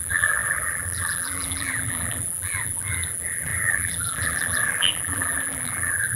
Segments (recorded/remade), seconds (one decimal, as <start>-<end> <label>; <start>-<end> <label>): 0.0-6.2 remade